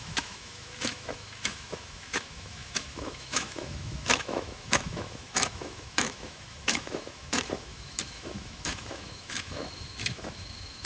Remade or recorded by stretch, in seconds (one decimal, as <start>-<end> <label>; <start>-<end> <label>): 0.0-10.9 remade